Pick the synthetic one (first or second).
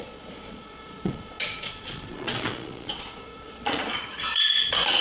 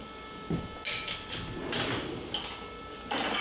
first